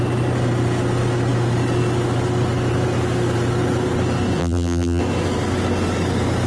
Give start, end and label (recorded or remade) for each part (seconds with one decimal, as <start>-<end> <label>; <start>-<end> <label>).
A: 0.0-4.4 recorded; 4.4-5.0 remade; 5.0-6.5 recorded